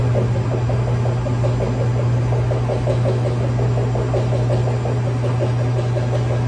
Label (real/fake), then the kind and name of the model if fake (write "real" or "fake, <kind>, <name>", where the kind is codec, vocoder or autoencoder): real